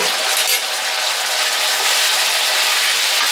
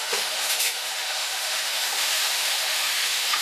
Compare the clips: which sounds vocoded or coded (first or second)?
second